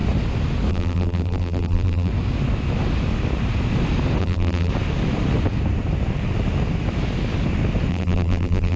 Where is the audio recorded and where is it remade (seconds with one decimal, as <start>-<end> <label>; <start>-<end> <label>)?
0.0-0.7 recorded; 0.7-2.1 remade; 2.1-4.2 recorded; 4.2-4.7 remade; 4.7-7.9 recorded; 7.9-8.8 remade